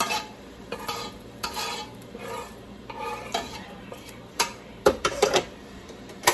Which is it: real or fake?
fake